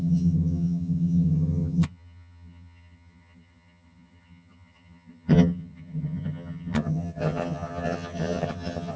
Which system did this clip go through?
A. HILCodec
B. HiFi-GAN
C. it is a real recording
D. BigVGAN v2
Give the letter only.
B